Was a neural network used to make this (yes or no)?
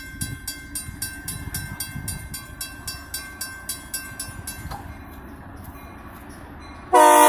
no